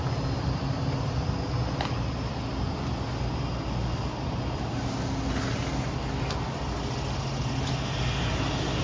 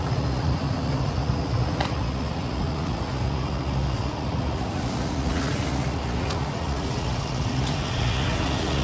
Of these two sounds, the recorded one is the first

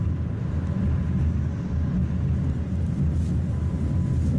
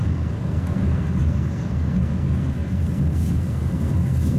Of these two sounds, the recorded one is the first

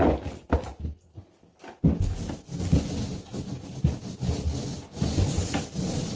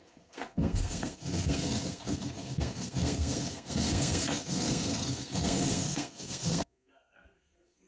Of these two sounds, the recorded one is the first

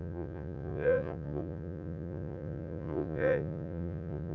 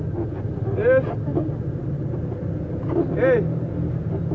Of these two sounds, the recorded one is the second